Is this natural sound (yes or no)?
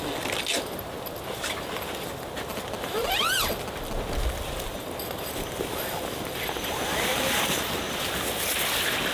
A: yes